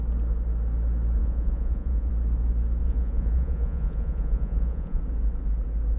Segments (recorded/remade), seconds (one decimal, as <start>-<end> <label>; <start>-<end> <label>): 0.0-1.2 recorded; 1.2-2.1 remade; 2.1-2.8 recorded; 2.8-5.0 remade; 5.0-6.0 recorded